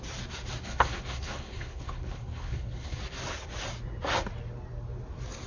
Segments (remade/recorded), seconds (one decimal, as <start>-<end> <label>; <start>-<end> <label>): 0.0-0.6 recorded; 0.6-3.0 remade; 3.0-5.5 recorded